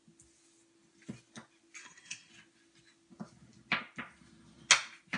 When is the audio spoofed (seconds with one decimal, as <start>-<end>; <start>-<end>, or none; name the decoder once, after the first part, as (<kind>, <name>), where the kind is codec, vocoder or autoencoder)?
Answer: 1.8-2.3 (codec, SNAC)